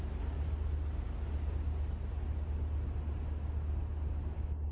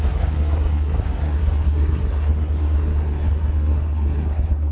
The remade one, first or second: second